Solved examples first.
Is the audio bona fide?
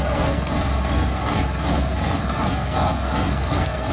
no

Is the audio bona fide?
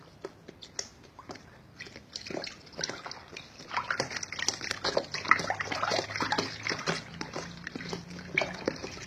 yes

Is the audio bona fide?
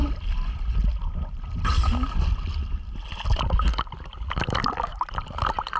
yes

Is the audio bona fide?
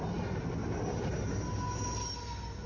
yes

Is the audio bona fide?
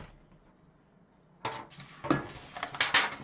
yes